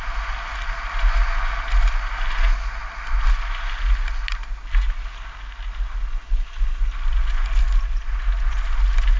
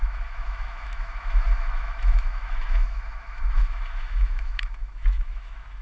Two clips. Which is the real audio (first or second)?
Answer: first